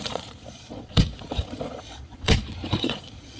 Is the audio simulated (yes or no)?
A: yes